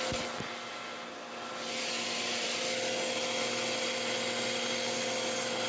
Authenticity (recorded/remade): recorded